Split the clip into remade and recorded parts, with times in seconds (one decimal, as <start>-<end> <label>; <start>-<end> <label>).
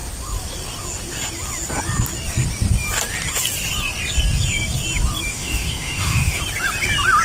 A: 0.0-5.3 recorded; 5.3-6.4 remade; 6.4-7.2 recorded